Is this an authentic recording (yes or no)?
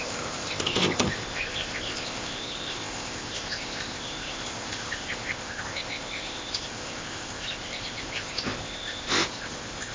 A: no